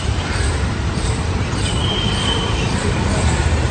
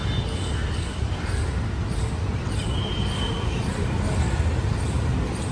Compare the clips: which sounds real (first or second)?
second